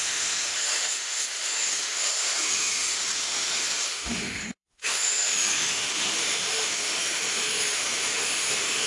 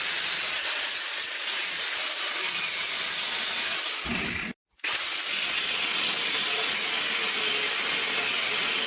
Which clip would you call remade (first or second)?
first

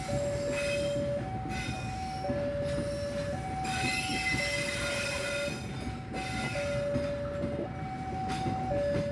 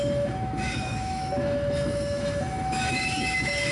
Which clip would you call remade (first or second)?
second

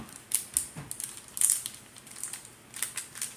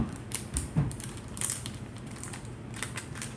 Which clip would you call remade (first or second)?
second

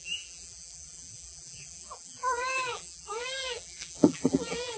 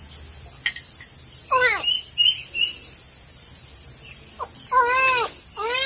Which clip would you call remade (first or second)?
first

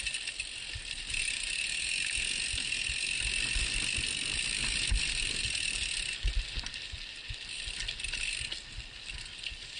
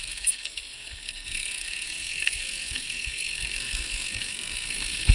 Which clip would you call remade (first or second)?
second